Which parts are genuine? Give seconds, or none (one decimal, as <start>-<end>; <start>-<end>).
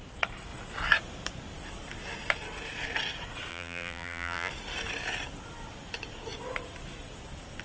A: 0.0-3.5; 4.5-7.6